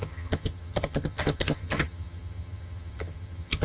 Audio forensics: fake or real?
fake